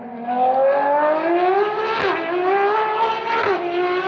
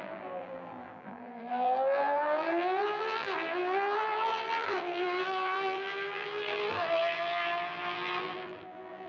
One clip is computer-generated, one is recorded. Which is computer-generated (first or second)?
second